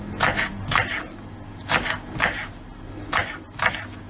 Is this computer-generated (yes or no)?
no